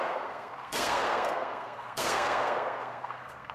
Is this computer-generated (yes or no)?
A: yes